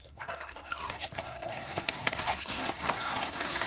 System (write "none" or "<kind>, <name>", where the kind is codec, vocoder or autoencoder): codec, SNAC